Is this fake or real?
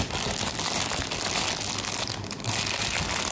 real